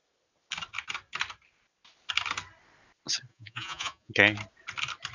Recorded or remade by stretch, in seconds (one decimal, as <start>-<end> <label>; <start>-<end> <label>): 0.0-3.3 recorded; 3.3-4.1 remade; 4.1-5.1 recorded